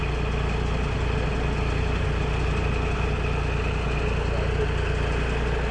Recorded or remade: recorded